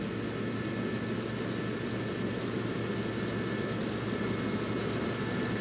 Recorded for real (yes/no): yes